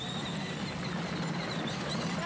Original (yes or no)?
yes